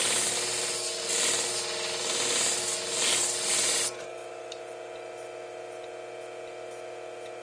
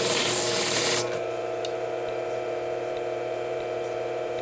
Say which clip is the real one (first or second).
first